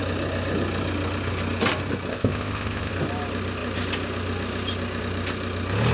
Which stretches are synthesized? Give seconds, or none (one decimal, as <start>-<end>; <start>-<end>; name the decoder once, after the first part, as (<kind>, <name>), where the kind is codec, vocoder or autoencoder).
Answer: 2.1-2.9 (codec, ZipCodec)